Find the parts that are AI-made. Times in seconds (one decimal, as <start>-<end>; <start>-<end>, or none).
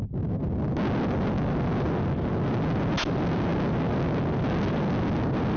none